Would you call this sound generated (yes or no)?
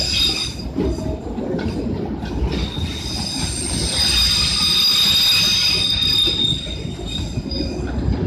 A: no